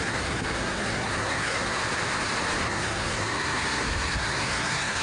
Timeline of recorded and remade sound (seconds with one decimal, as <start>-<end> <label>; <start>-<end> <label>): 0.0-1.8 remade; 1.8-2.6 recorded; 2.6-5.0 remade

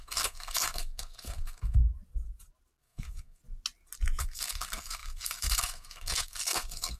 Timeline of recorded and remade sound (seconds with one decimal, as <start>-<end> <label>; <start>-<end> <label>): 0.0-1.8 remade; 1.8-2.8 recorded; 2.8-3.4 remade; 3.4-4.2 recorded; 4.2-7.0 remade